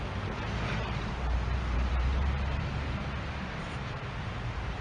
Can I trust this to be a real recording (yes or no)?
no